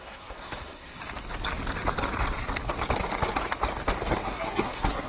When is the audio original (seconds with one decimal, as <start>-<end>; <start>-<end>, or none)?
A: 1.0-4.1

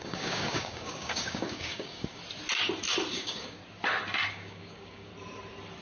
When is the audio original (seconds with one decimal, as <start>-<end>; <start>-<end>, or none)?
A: 2.2-3.1; 3.6-4.3; 5.1-5.8

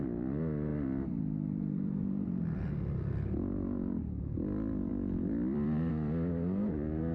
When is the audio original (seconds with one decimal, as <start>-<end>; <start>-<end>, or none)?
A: 0.0-0.7; 2.7-4.9; 5.9-7.1

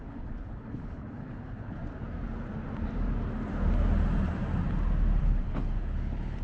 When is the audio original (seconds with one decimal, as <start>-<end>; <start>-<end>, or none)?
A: 1.8-5.2

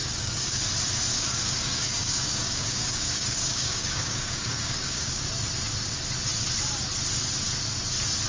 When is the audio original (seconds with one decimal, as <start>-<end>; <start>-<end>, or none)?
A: 0.7-1.1; 5.2-8.3

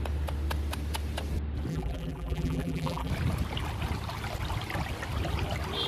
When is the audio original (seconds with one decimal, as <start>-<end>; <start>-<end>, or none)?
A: 0.0-1.7; 3.1-5.9

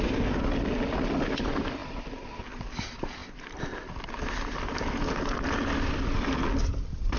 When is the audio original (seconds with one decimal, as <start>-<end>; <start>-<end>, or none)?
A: 0.0-7.2